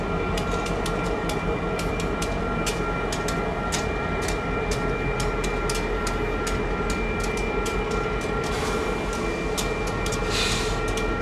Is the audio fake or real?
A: real